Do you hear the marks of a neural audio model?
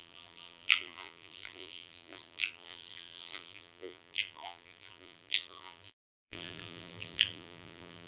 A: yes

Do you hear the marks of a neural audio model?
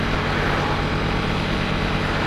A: no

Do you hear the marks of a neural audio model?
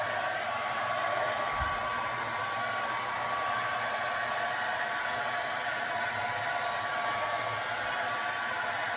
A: no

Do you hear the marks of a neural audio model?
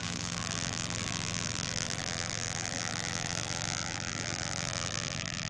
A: yes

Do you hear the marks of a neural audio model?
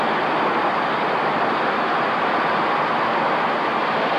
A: no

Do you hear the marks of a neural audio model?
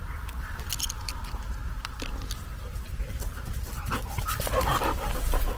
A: no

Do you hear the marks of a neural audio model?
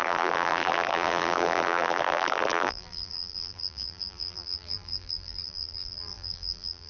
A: yes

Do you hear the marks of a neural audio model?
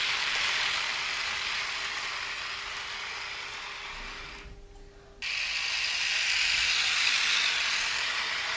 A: no